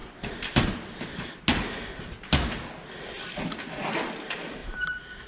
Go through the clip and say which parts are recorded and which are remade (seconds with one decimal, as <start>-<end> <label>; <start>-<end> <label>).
0.0-1.4 remade; 1.4-4.6 recorded; 4.6-5.3 remade